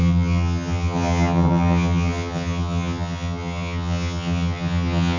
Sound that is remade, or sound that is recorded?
remade